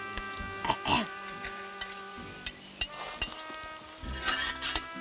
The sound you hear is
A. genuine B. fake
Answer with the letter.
A